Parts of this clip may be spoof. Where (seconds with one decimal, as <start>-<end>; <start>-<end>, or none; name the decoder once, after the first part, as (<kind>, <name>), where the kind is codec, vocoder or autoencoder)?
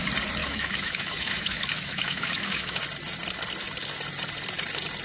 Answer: 0.4-2.8 (autoencoder, DAC-VAE)